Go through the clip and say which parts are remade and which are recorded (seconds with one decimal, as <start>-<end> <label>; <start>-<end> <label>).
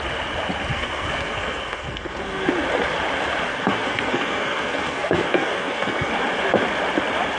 0.0-0.7 recorded; 0.7-2.5 remade; 2.5-3.5 recorded; 3.5-6.1 remade; 6.1-7.4 recorded